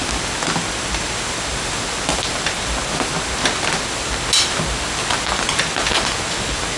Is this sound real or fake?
real